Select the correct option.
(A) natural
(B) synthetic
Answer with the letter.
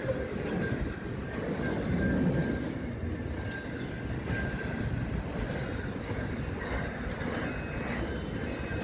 A